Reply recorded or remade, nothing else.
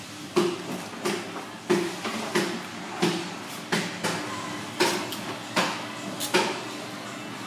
recorded